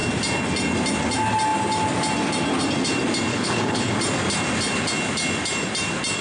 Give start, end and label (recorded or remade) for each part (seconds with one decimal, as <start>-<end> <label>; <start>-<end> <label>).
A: 0.0-3.3 recorded; 3.3-3.9 remade; 3.9-6.2 recorded